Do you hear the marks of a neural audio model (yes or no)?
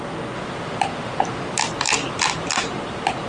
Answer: no